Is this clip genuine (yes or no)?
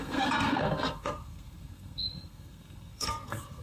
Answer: no